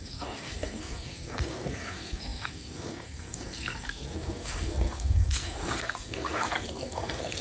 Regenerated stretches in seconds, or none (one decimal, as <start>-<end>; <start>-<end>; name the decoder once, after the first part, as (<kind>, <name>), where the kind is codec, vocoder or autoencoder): 0.0-7.4 (codec, SNAC)